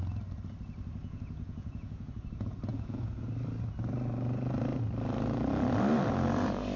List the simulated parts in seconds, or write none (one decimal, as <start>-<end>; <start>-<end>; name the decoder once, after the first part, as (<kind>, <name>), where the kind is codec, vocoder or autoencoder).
1.0-2.1 (vocoder, Vocos); 2.7-3.3